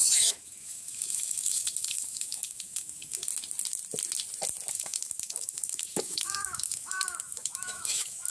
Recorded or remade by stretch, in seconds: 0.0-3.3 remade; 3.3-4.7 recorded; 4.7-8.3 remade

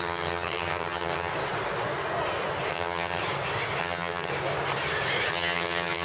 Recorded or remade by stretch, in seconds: 0.0-1.3 remade; 1.3-2.7 recorded; 2.7-3.2 remade; 3.2-3.8 recorded; 3.8-4.3 remade; 4.3-5.3 recorded; 5.3-6.0 remade